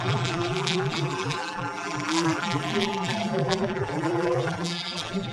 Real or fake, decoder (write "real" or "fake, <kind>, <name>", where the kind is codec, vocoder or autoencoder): fake, vocoder, BigVGAN v2